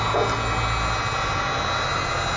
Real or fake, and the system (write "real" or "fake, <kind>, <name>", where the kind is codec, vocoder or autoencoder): real